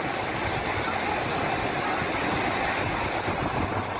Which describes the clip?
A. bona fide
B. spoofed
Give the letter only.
A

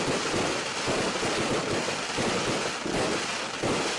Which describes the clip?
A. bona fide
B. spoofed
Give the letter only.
A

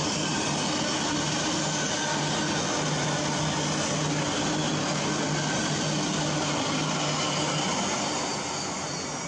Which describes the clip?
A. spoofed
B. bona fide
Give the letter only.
B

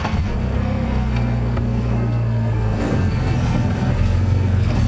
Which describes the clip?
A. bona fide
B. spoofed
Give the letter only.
B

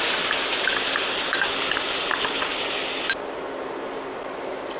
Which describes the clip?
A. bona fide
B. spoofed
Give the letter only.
A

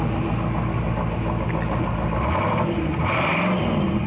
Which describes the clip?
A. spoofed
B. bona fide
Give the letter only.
B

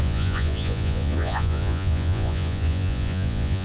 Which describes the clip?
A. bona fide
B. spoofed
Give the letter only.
B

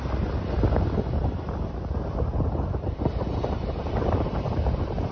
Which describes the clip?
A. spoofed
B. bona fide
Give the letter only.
B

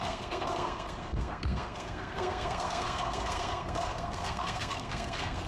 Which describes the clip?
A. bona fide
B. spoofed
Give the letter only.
B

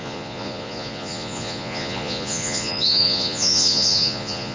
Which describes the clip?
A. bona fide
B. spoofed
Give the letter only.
B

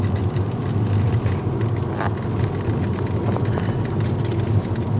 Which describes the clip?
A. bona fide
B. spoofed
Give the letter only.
A